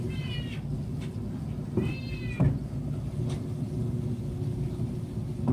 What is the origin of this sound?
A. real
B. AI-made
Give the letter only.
A